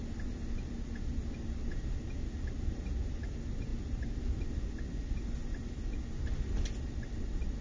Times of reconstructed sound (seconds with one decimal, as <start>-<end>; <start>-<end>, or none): none